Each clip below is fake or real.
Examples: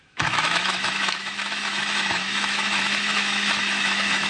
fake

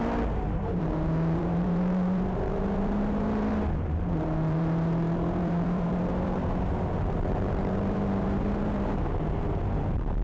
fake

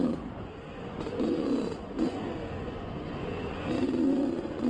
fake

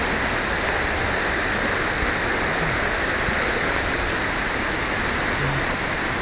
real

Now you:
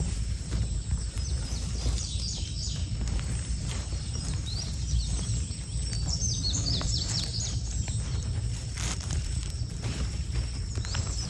fake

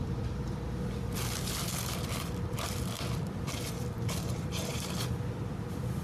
fake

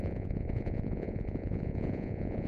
fake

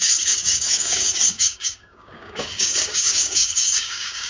fake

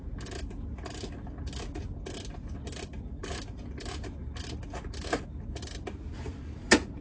real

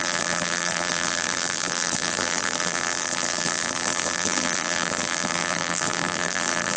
fake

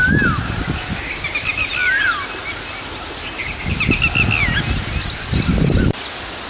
real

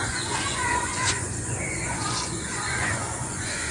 fake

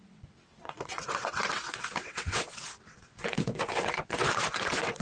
fake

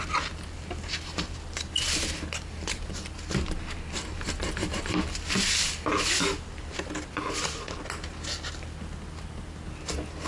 real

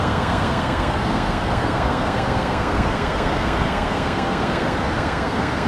fake